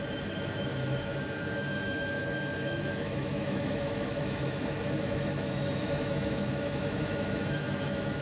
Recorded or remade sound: remade